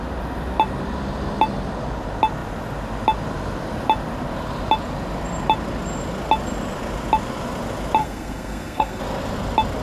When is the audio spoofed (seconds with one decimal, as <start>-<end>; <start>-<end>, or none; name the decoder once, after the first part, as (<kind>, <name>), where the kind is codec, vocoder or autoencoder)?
8.0-9.0 (codec, SNAC)